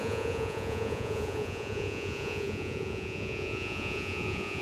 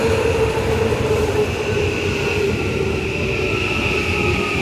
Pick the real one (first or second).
second